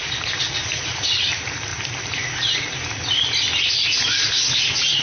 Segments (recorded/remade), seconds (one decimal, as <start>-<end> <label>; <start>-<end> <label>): 0.0-5.0 recorded